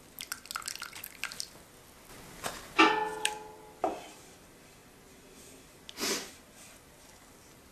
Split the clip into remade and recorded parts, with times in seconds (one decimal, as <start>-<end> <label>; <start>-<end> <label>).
0.0-7.7 recorded